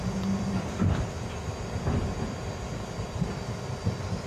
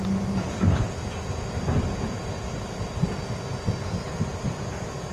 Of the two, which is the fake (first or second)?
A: first